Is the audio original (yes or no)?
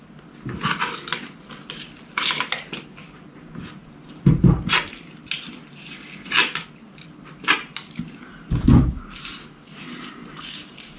yes